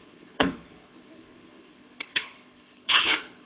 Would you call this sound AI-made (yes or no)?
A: yes